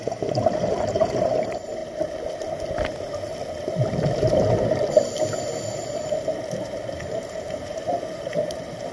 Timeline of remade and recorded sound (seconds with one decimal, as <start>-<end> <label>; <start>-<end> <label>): 0.0-1.8 remade; 1.8-6.4 recorded; 6.4-8.9 remade